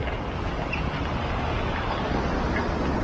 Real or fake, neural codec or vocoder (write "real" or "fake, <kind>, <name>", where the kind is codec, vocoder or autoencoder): real